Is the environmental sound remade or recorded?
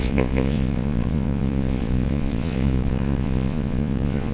remade